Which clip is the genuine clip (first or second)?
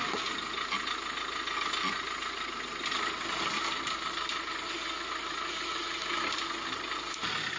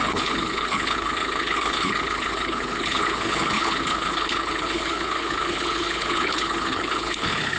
first